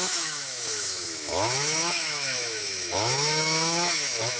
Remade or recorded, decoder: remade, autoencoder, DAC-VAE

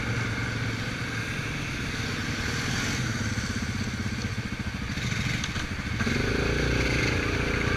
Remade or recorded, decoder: recorded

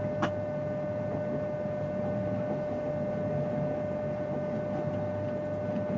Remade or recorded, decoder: recorded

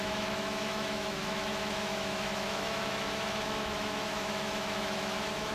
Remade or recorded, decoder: remade, autoencoder, DAC-VAE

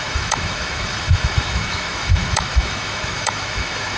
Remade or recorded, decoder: remade, autoencoder, DAC-VAE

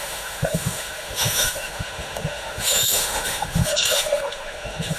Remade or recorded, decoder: remade, autoencoder, DAC-VAE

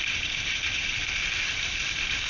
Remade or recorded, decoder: recorded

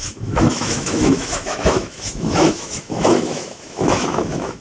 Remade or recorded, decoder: remade, autoencoder, DAC-VAE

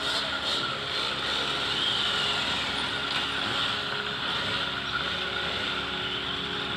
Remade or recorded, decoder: recorded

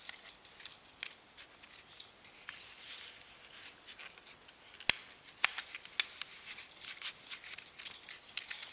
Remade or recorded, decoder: recorded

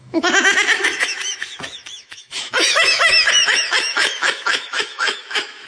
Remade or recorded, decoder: remade, autoencoder, DAC-VAE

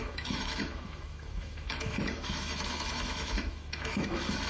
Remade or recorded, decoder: remade, autoencoder, DAC-VAE